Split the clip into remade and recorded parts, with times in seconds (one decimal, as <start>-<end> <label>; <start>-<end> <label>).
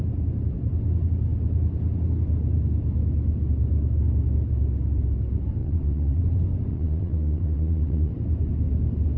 0.0-5.6 recorded; 5.6-6.2 remade; 6.2-6.7 recorded; 6.7-8.1 remade; 8.1-9.2 recorded